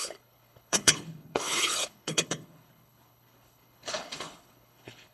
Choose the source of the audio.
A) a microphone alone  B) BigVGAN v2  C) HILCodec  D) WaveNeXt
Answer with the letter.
C